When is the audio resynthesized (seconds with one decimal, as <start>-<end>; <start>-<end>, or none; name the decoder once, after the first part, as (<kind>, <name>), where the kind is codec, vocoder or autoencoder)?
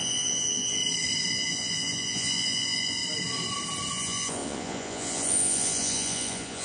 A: 0.0-0.8 (vocoder, Vocos); 1.3-3.0; 3.9-6.6